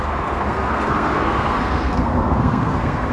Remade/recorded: remade